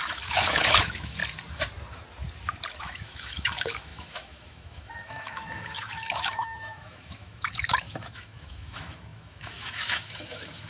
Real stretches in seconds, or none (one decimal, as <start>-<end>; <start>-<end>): 1.2-2.8